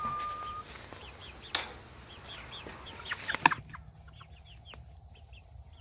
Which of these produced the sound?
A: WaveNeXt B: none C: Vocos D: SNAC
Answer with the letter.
B